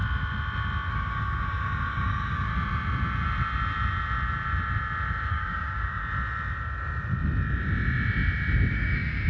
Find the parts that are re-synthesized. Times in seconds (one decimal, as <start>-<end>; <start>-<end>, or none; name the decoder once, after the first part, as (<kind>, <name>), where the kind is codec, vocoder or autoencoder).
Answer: 0.9-2.5 (codec, DAC); 5.3-6.0; 8.7-9.3